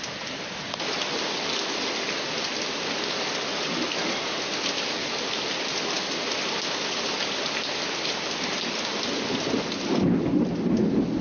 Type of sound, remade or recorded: recorded